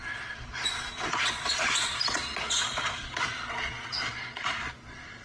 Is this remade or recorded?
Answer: remade